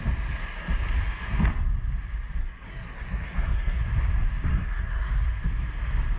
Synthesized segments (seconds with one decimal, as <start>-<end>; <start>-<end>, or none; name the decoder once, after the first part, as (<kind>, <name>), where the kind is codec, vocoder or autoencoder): 2.4-3.8 (codec, SNAC); 4.5-5.1